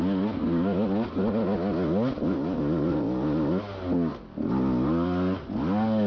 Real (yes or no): yes